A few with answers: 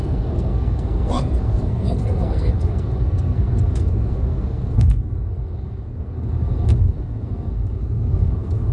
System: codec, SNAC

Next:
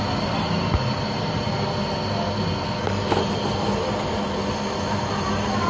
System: none